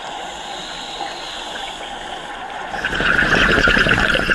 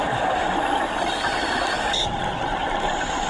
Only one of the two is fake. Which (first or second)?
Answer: first